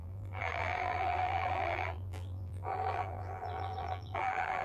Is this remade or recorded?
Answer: remade